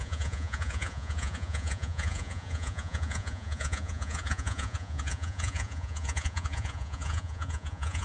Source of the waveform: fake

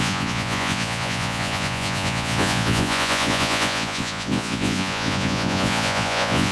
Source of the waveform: fake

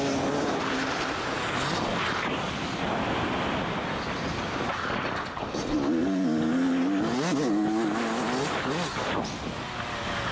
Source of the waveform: real